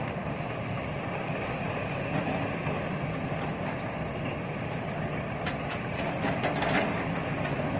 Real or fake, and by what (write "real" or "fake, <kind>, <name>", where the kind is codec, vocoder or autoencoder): fake, vocoder, BigVGAN v2